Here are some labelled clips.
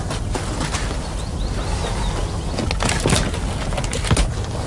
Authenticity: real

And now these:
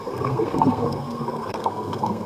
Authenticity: fake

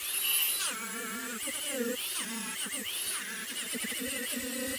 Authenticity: real